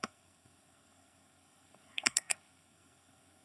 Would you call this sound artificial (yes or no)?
yes